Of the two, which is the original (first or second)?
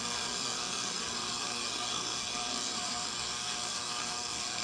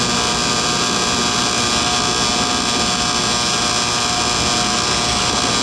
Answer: second